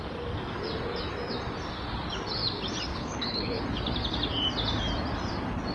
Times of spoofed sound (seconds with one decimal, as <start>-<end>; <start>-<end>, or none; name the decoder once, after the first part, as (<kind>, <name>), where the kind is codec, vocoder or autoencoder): 2.9-3.6 (codec, HILCodec)

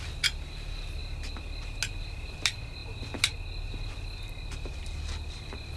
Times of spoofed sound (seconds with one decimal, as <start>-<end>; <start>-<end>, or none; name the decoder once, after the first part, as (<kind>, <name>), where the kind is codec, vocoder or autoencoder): none

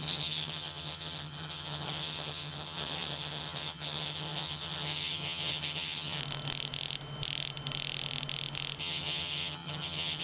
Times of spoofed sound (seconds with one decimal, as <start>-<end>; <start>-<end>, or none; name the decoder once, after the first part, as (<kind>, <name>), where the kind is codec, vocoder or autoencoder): 0.0-6.2 (vocoder, HiFi-GAN); 8.8-10.2

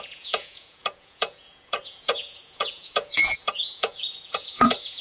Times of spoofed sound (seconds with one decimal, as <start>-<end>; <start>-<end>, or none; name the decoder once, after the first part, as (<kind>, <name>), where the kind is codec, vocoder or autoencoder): 0.0-5.0 (vocoder, Vocos)

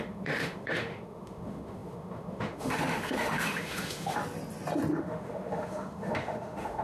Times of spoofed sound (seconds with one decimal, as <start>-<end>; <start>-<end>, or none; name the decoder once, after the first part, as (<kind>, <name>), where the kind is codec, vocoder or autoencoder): 0.0-4.2 (autoencoder, DAC-VAE); 5.0-6.8